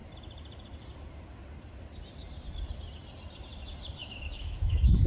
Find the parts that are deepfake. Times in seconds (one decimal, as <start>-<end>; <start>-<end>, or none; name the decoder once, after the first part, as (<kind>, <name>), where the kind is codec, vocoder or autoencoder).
4.0-5.1 (autoencoder, DAC-VAE)